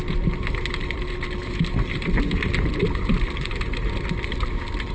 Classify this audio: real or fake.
real